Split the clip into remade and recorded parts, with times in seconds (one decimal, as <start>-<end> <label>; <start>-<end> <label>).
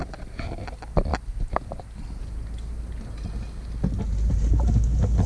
0.0-5.3 recorded